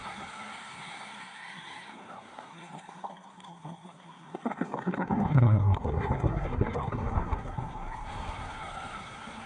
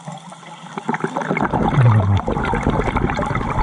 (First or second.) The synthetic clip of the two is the first